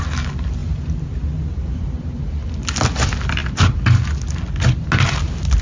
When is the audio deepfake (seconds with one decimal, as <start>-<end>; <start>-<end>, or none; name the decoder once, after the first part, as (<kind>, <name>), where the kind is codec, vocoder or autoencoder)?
none